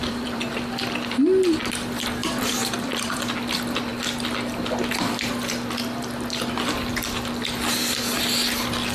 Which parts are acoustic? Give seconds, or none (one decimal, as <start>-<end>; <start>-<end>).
0.5-2.2; 3.3-8.9